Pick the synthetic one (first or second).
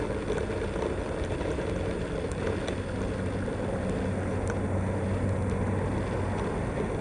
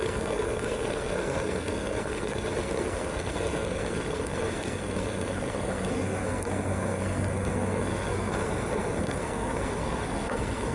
second